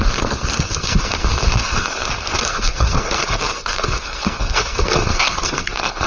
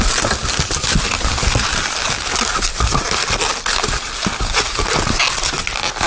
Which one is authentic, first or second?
second